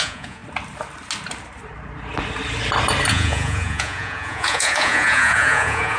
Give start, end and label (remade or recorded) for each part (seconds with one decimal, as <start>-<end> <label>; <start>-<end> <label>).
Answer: 0.0-0.4 remade; 0.4-3.1 recorded; 3.1-6.0 remade